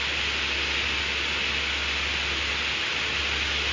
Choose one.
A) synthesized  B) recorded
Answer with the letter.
B